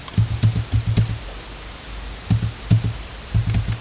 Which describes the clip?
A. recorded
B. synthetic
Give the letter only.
A